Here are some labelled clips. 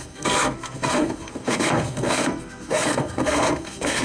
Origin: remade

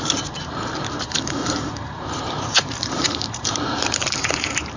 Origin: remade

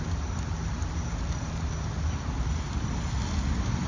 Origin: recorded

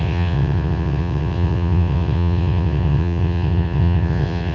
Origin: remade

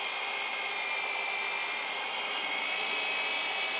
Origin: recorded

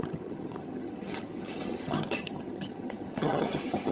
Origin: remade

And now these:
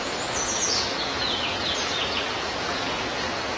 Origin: remade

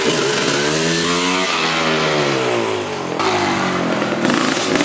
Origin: recorded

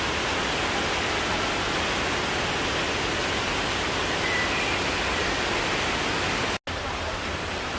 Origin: recorded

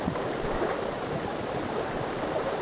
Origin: remade